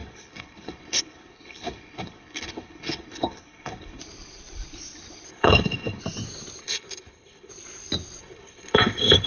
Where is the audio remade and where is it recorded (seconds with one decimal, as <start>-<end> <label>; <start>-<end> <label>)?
0.0-4.0 remade; 4.0-5.3 recorded; 5.3-6.0 remade; 6.0-6.6 recorded; 6.6-7.5 remade; 7.5-8.2 recorded; 8.2-9.3 remade